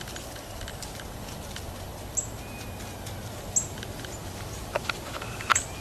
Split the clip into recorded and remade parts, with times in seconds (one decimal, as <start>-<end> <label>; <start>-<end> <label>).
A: 0.0-5.8 recorded